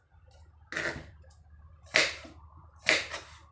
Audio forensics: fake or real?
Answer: real